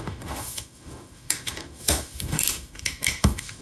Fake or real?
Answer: fake